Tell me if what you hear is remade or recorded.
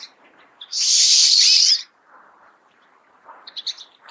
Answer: remade